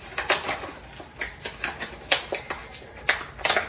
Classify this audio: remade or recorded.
recorded